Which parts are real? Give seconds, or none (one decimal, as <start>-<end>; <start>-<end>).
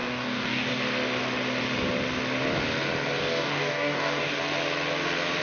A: 0.8-3.2; 4.4-5.4